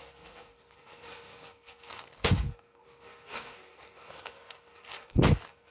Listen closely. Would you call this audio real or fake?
fake